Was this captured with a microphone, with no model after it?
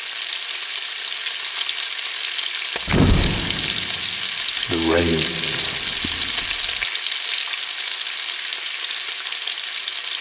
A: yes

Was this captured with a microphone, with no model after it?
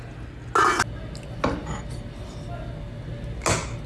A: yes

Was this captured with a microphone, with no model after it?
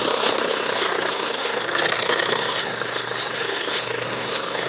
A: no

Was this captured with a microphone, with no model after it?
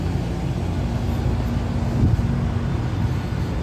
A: yes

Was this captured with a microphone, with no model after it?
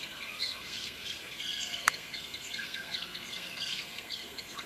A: no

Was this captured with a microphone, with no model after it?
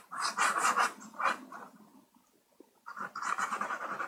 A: no